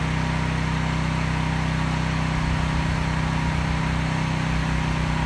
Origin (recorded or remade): recorded